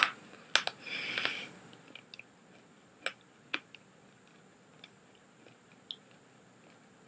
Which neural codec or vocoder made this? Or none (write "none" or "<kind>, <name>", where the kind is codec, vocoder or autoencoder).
none